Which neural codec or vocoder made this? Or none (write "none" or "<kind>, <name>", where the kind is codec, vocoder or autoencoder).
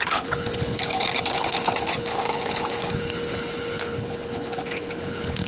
codec, HILCodec